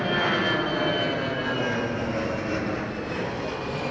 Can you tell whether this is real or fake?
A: real